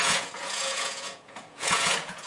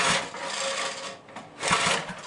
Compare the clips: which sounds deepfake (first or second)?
first